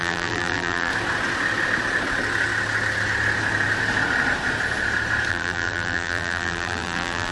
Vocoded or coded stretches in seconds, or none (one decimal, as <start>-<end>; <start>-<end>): 0.0-0.9; 5.3-7.3